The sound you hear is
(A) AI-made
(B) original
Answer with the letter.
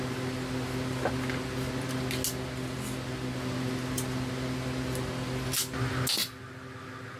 B